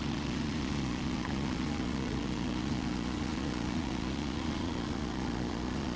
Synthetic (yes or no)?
yes